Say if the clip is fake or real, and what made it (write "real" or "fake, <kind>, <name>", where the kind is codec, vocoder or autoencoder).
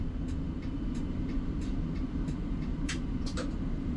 fake, vocoder, BigVGAN v2